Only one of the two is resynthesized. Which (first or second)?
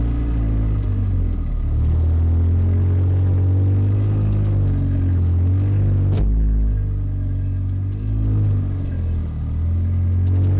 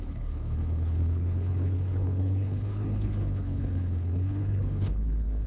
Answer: second